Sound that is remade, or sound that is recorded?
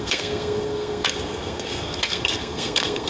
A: remade